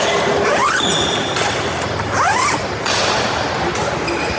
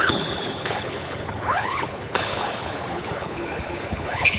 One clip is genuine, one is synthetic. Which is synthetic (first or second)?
second